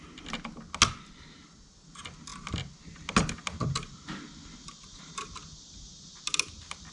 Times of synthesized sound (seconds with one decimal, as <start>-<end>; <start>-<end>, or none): none